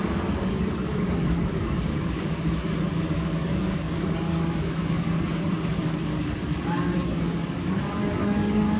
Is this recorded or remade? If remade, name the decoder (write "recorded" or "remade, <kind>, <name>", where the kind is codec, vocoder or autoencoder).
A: remade, codec, DAC